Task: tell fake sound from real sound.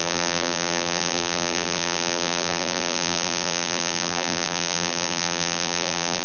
fake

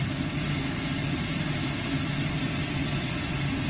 real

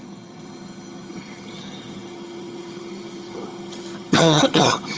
fake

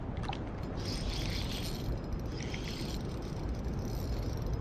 real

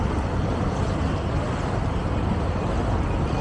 real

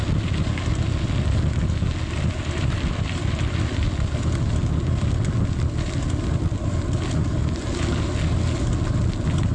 real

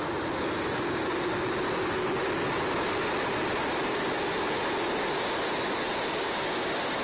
real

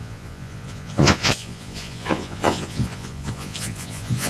fake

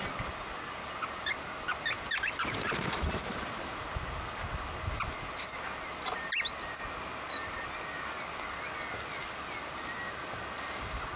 real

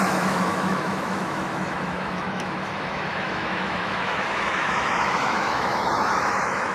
fake